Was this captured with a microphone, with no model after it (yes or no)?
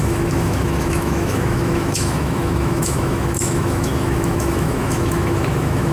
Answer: no